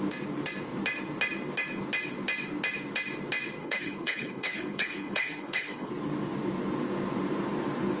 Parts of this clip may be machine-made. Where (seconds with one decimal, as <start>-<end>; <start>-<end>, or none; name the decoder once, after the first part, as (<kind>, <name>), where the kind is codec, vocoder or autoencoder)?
3.6-5.9 (codec, HILCodec)